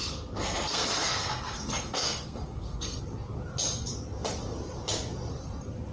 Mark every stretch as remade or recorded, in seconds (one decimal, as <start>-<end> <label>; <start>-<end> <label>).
0.0-3.0 remade; 3.0-5.9 recorded